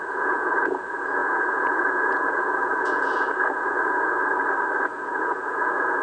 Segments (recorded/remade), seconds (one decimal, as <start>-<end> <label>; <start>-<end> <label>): 0.0-4.2 remade; 4.2-4.8 recorded; 4.8-6.0 remade

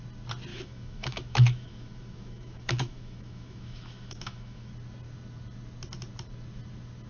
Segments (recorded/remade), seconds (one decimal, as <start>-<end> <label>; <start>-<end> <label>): 0.0-0.5 recorded; 0.5-4.7 remade; 4.7-7.1 recorded

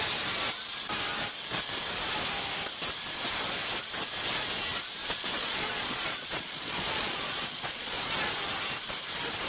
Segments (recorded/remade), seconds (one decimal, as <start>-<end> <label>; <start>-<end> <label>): 0.0-5.0 recorded; 5.0-8.3 remade; 8.3-9.5 recorded

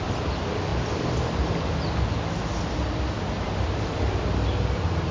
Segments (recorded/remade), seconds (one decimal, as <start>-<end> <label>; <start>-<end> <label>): 0.0-5.1 recorded

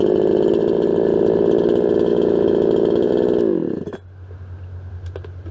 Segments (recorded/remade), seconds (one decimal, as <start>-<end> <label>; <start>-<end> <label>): 0.0-2.1 recorded; 2.1-3.1 remade; 3.1-5.5 recorded

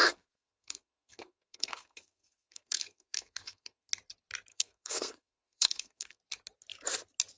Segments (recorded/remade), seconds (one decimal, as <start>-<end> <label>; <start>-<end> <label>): 0.0-3.9 remade; 3.9-4.5 recorded; 4.5-6.2 remade; 6.2-7.4 recorded